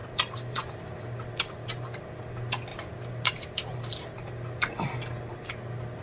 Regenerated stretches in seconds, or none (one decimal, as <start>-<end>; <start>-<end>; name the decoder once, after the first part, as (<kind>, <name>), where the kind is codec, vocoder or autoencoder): 0.0-2.0 (vocoder, BigVGAN v2); 2.7-4.0